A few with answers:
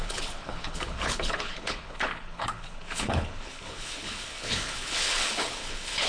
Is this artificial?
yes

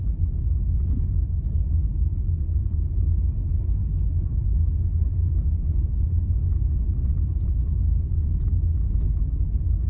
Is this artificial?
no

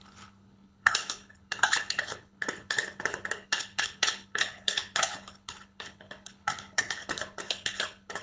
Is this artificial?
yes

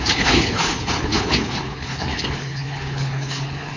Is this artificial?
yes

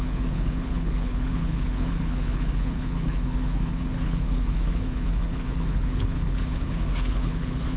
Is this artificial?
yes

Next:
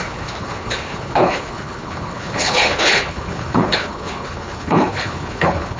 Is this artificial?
yes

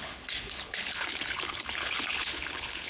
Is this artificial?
yes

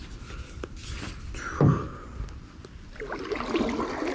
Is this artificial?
no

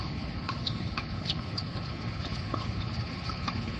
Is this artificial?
yes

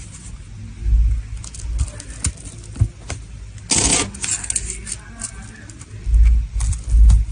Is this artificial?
no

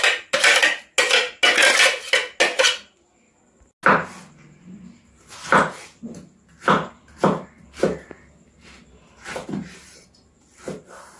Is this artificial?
no